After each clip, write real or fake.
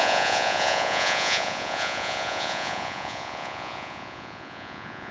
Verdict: fake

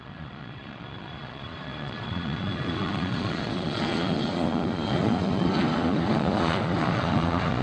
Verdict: fake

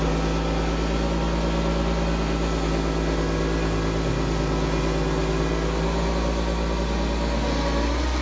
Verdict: real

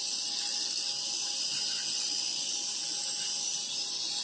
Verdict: real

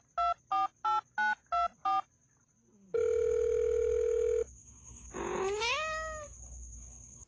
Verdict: real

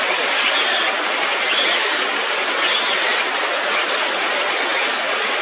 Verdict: real